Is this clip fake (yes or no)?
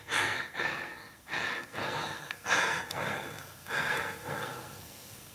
yes